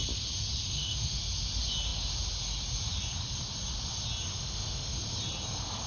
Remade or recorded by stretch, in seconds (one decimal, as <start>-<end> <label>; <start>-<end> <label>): 0.0-0.6 recorded; 0.6-1.2 remade; 1.2-4.3 recorded; 4.3-4.9 remade; 4.9-5.9 recorded